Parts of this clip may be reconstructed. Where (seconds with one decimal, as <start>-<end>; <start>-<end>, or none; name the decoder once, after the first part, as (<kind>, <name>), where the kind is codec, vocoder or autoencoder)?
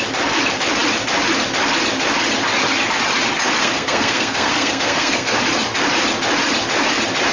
3.6-5.4 (codec, SNAC)